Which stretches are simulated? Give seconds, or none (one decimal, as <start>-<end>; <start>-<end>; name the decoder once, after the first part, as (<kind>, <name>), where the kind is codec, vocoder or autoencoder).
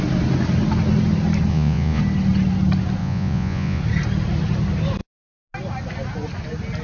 1.5-2.0 (vocoder, Vocos); 3.0-3.8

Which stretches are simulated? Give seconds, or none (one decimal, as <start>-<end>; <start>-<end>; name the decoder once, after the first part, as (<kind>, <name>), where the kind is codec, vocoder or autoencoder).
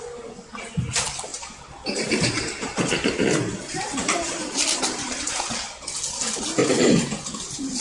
1.3-5.4 (vocoder, BigVGAN v2); 6.6-7.8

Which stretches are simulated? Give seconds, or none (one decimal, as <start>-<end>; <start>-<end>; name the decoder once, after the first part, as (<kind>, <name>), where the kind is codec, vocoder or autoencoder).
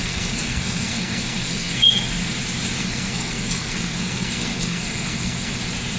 0.0-2.1 (codec, SNAC); 2.8-5.6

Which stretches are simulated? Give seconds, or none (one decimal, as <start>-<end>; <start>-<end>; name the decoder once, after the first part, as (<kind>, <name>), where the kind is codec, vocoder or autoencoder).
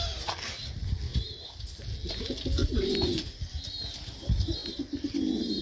2.6-3.7 (vocoder, BigVGAN v2); 4.6-5.1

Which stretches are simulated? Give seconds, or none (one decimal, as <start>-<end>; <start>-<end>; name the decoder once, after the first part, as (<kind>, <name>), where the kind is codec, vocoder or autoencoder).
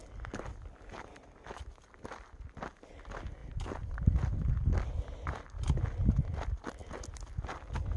none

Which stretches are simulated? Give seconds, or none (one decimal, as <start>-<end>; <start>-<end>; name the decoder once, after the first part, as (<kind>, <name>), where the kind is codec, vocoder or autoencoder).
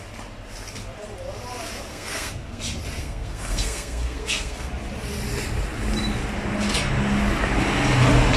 1.9-2.6 (codec, SNAC); 3.0-4.7